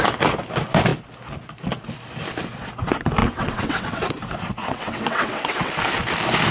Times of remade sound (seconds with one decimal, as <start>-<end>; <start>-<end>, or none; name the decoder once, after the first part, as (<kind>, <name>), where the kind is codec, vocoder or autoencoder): 3.2-4.0 (vocoder, WaveNeXt); 4.6-5.7

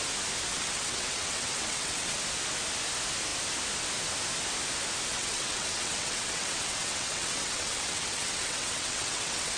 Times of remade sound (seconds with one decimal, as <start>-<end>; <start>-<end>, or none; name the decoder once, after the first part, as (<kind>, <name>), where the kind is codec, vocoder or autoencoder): 0.5-2.2 (vocoder, WaveNeXt); 5.1-9.6